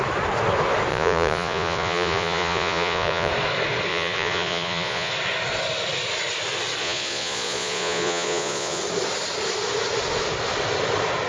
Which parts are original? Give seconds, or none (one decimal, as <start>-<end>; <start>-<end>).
0.0-0.9; 3.3-3.9; 5.1-6.8; 8.8-11.3